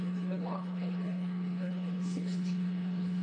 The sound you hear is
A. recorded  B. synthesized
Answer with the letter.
B